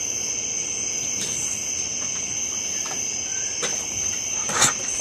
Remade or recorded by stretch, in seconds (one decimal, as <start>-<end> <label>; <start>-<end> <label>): 0.0-3.3 recorded; 3.3-4.1 remade; 4.1-5.0 recorded